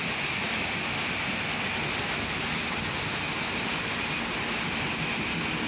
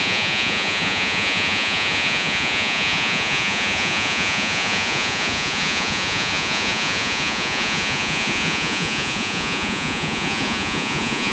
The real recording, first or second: first